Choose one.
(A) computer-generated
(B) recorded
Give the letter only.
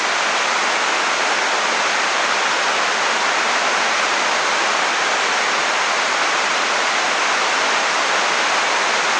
B